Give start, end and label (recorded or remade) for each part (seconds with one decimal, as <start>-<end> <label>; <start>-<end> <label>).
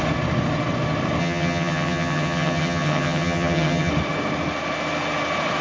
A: 0.0-1.2 recorded; 1.2-3.9 remade; 3.9-5.6 recorded